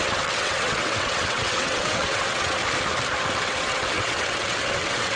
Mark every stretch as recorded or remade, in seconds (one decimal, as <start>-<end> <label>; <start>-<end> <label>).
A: 0.0-2.6 remade; 2.6-3.3 recorded; 3.3-5.2 remade